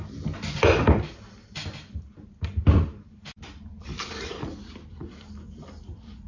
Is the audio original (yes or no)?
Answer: yes